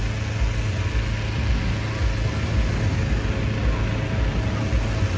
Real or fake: real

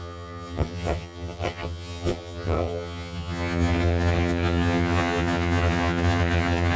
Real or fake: fake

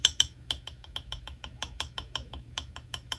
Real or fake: fake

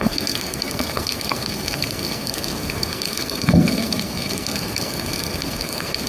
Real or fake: fake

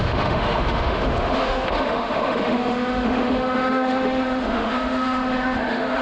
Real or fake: fake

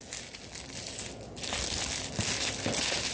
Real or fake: real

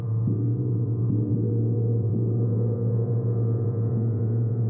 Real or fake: fake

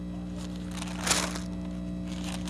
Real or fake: real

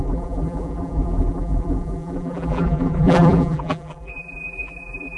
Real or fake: fake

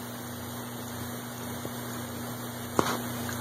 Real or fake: real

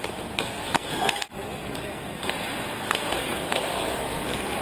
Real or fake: fake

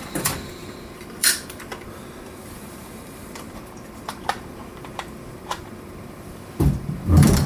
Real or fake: fake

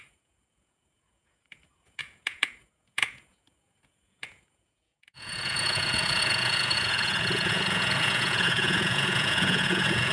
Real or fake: fake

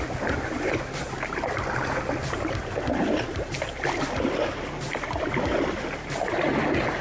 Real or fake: real